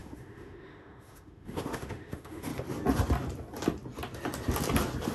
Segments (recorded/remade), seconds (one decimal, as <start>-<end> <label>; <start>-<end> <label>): 0.0-2.5 remade; 2.5-5.1 recorded